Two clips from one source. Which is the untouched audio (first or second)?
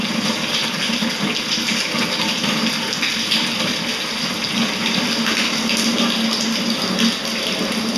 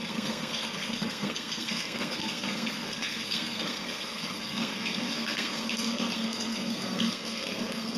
first